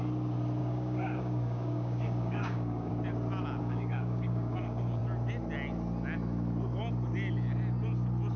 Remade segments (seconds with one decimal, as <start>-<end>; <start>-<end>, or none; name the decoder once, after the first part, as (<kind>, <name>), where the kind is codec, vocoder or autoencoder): 0.6-2.9 (codec, DAC); 3.6-5.0